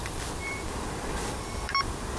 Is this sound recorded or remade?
remade